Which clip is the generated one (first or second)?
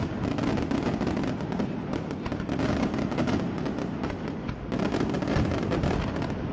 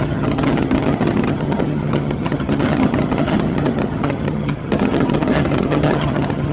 second